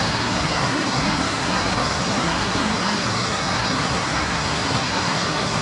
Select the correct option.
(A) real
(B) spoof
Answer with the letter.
B